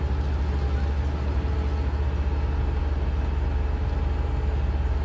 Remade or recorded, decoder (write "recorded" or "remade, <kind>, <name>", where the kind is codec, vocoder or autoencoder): recorded